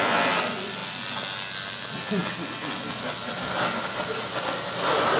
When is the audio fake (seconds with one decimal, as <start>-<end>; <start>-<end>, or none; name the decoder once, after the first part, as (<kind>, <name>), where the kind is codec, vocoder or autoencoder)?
none

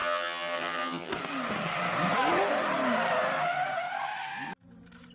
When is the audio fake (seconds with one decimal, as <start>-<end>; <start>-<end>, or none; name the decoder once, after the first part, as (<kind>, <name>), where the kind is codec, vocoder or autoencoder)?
0.0-1.1 (vocoder, HiFi-GAN)

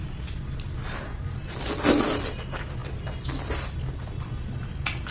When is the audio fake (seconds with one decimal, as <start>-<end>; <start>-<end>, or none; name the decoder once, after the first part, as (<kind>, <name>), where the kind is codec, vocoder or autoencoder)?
none

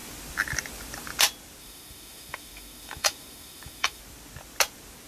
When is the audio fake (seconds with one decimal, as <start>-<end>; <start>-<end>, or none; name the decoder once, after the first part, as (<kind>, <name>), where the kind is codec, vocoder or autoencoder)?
1.6-4.0 (autoencoder, DAC-VAE)

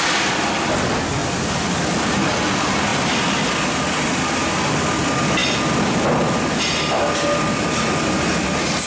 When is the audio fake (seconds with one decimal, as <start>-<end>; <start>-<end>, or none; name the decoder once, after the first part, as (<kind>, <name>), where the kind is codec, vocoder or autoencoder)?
none

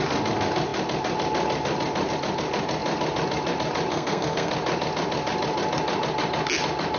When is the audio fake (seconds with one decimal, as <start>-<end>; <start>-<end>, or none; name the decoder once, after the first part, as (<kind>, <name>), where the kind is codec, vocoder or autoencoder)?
3.9-4.5 (codec, SNAC)

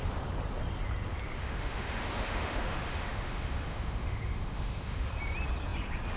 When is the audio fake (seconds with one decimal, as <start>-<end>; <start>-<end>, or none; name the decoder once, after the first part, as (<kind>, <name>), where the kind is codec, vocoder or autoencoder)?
1.4-5.1 (autoencoder, DAC-VAE)